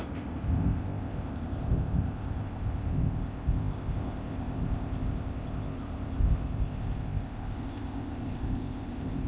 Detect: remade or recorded remade